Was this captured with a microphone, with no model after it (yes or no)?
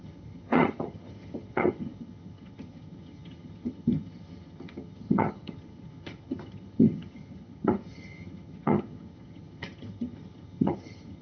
no